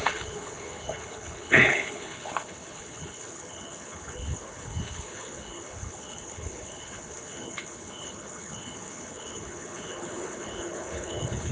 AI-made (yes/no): yes